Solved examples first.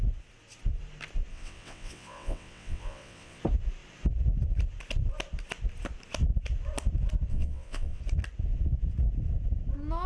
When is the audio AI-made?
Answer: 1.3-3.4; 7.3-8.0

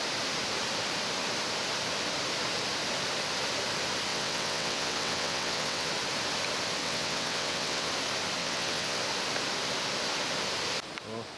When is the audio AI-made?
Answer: 4.1-5.9; 6.8-7.9; 8.4-9.0

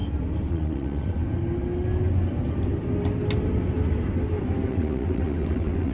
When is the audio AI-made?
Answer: 0.5-1.2; 4.7-5.9

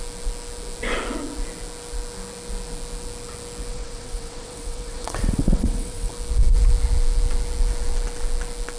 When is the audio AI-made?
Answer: 3.7-6.1

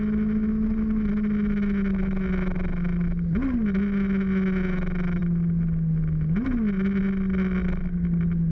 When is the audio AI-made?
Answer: none